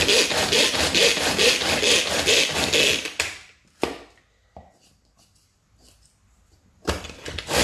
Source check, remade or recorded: recorded